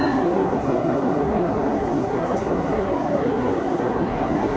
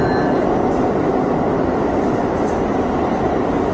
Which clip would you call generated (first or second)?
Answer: first